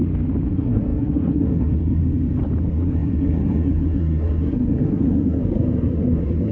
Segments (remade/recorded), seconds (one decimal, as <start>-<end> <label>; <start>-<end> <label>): 0.0-0.5 recorded; 0.5-2.0 remade; 2.0-2.6 recorded; 2.6-6.5 remade